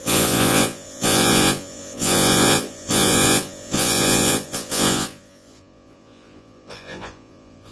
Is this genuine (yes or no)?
no